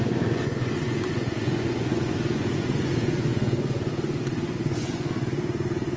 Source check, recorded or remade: remade